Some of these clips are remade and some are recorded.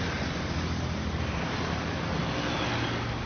recorded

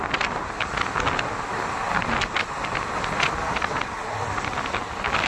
recorded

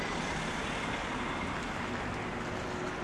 recorded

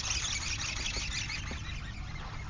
recorded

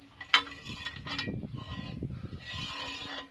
recorded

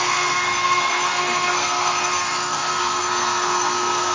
remade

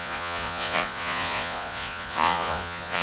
remade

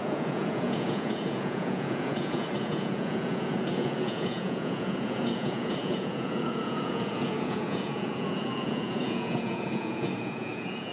remade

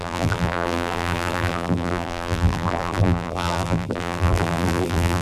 remade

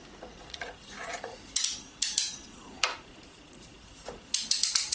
remade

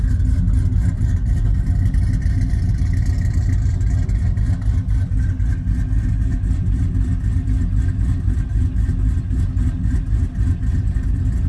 recorded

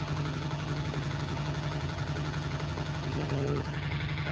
remade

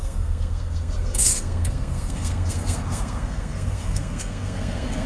remade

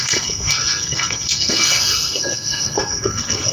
remade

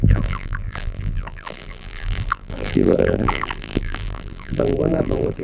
remade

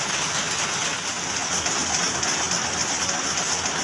recorded